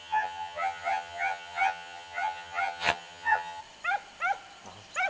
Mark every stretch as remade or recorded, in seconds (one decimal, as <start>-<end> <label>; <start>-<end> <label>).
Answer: 0.0-3.6 remade; 3.6-5.1 recorded